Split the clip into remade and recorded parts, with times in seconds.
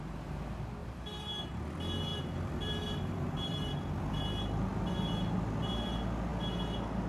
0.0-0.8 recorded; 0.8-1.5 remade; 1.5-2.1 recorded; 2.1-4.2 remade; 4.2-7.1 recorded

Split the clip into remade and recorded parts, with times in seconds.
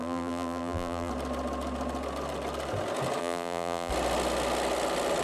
0.0-1.1 remade; 1.1-3.2 recorded; 3.2-3.9 remade; 3.9-5.2 recorded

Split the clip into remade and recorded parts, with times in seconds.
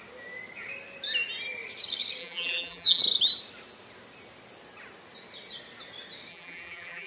0.0-2.2 recorded; 2.2-3.0 remade; 3.0-6.3 recorded; 6.3-7.1 remade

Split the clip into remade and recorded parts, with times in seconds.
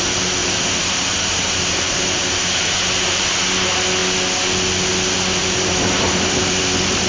0.0-0.4 recorded; 0.4-3.3 remade; 3.3-5.4 recorded; 5.4-6.6 remade; 6.6-7.1 recorded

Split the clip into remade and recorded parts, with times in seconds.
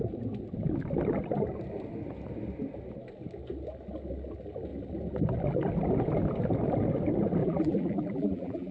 0.0-7.4 recorded; 7.4-8.7 remade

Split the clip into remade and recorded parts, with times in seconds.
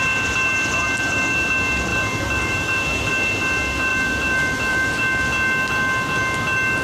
0.0-1.9 recorded; 1.9-3.1 remade; 3.1-3.9 recorded; 3.9-5.0 remade; 5.0-6.8 recorded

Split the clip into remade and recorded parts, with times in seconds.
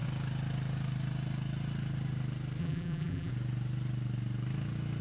0.0-2.6 recorded; 2.6-3.3 remade; 3.3-5.0 recorded